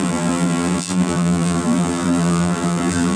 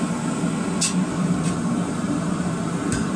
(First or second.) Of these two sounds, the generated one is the first